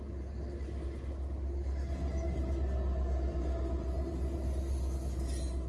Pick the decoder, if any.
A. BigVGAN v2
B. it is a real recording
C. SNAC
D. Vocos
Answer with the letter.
B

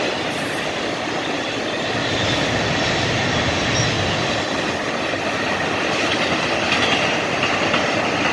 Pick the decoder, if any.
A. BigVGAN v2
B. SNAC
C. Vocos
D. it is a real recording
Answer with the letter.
D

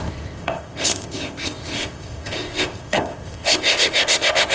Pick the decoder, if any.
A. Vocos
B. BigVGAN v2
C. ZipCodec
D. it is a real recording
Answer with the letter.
C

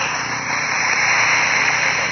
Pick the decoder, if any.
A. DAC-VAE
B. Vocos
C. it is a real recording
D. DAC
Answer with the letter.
C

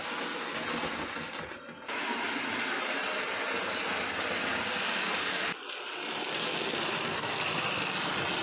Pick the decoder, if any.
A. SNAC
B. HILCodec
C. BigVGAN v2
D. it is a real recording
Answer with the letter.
D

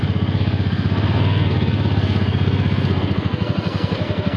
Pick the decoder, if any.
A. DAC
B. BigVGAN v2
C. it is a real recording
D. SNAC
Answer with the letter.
D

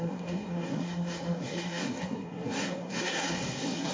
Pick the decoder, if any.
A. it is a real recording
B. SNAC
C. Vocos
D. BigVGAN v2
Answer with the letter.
B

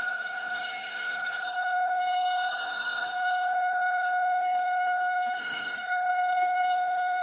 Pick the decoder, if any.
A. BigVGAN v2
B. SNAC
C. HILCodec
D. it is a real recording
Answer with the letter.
C